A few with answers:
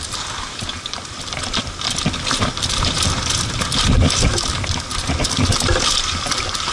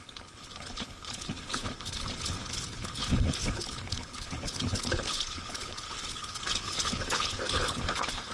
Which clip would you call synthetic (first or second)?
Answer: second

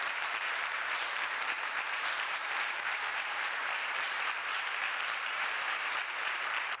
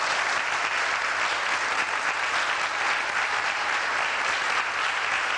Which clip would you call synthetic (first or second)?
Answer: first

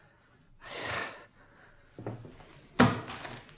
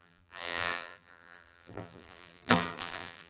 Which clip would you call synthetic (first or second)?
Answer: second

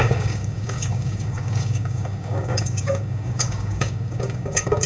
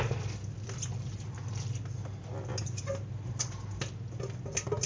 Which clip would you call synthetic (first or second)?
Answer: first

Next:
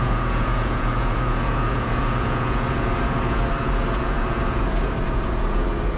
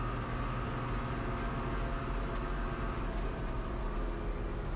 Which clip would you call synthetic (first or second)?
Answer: first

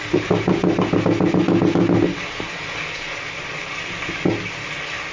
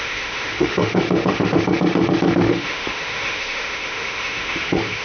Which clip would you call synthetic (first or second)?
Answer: second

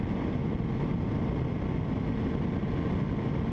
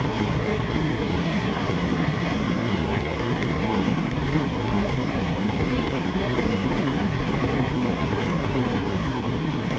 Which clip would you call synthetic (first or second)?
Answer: second